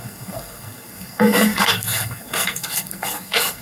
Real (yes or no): no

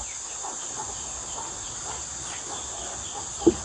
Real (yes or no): yes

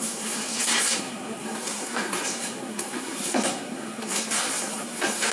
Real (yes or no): no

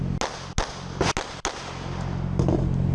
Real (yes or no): yes